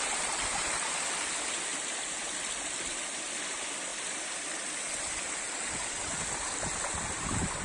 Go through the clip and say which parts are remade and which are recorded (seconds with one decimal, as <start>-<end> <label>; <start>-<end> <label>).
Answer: 0.0-7.6 recorded

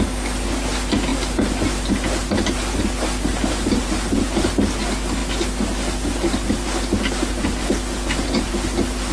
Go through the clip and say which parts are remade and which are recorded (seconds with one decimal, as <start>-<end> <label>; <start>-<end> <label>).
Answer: 0.0-3.3 recorded; 3.3-4.2 remade; 4.2-9.1 recorded

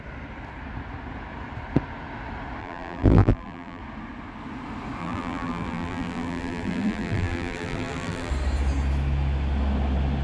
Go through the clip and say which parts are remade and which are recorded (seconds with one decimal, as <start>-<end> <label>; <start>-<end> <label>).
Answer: 0.0-2.6 recorded; 2.6-3.8 remade; 3.8-5.0 recorded; 5.0-8.3 remade; 8.3-10.2 recorded

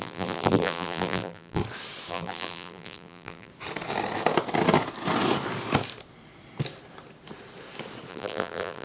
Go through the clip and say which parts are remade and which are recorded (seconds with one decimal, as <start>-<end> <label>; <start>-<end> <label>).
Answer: 0.0-1.6 remade; 1.6-2.1 recorded; 2.1-3.5 remade; 3.5-8.1 recorded; 8.1-8.8 remade

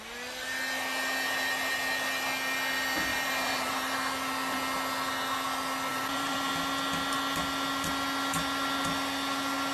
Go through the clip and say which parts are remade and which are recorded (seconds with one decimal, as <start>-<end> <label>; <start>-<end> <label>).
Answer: 0.0-3.1 recorded; 3.1-3.9 remade; 3.9-5.9 recorded; 5.9-6.5 remade; 6.5-9.7 recorded

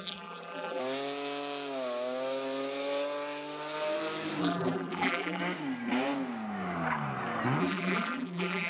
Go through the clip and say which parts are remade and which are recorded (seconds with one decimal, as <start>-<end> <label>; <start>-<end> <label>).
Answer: 0.0-0.8 remade; 0.8-4.4 recorded; 4.4-5.4 remade; 5.4-7.6 recorded; 7.6-8.7 remade

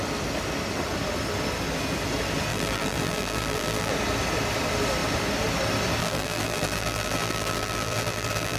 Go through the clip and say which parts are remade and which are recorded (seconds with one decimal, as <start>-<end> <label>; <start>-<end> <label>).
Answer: 0.0-2.5 recorded; 2.5-3.9 remade; 3.9-6.0 recorded; 6.0-8.6 remade